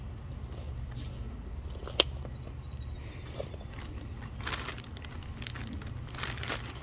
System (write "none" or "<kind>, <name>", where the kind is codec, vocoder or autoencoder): none